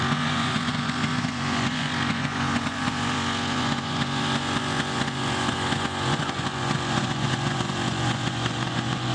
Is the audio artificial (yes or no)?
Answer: yes